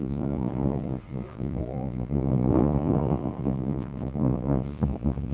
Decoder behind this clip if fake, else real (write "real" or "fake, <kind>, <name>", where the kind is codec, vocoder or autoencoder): fake, vocoder, Vocos